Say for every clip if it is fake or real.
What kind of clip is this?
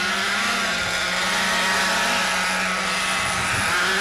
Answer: real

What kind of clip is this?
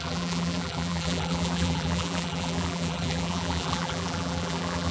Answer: fake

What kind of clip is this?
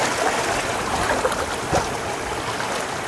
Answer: real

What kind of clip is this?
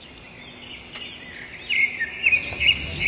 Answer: real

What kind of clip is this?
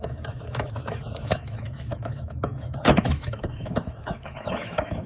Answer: fake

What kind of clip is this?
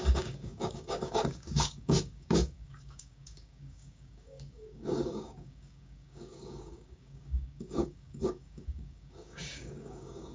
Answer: fake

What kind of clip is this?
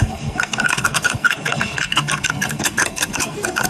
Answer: fake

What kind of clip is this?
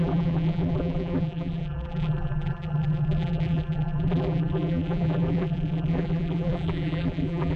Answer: fake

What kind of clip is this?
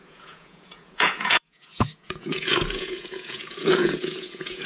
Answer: fake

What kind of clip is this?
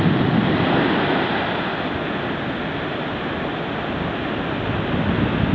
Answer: real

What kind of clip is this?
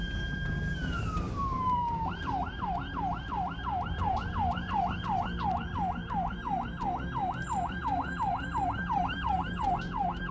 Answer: fake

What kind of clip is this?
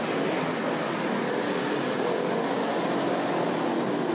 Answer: real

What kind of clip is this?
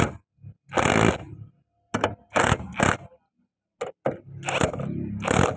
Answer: real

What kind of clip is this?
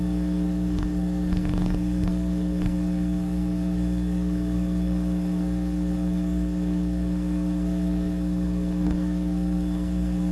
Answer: fake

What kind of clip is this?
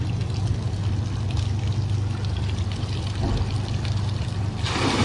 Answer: real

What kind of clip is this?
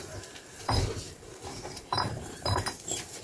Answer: fake